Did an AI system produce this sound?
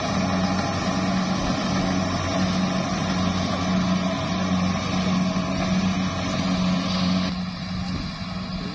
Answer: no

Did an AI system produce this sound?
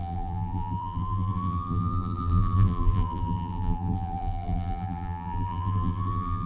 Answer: yes